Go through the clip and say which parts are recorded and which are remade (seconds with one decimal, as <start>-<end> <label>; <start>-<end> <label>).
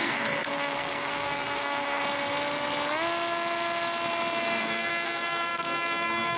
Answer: 0.0-2.0 remade; 2.0-4.6 recorded; 4.6-6.4 remade